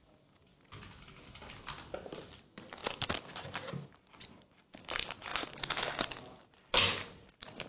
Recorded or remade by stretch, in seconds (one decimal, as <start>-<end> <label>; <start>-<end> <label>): 0.0-5.3 remade; 5.3-5.9 recorded; 5.9-7.7 remade